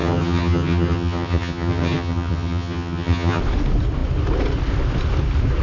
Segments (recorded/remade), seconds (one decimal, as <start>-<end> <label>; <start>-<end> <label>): 0.0-3.4 remade; 3.4-5.6 recorded